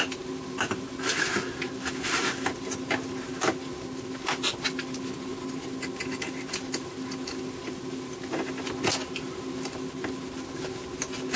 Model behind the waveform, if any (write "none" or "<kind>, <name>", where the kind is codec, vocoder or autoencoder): none